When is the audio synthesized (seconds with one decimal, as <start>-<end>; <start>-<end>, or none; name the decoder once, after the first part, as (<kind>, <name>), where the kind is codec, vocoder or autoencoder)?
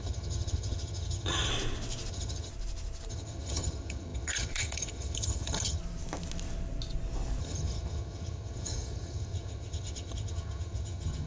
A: 0.0-1.5 (vocoder, HiFi-GAN); 2.1-2.5; 3.1-5.8; 7.4-11.3